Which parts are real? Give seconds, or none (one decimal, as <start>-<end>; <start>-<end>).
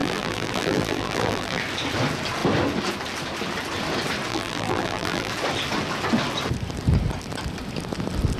1.6-4.3; 5.3-8.4